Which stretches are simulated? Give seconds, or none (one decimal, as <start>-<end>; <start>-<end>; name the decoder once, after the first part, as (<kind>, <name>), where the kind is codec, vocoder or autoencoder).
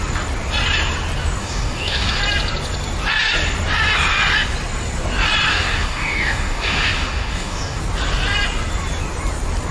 1.4-2.2 (codec, DAC); 5.5-7.8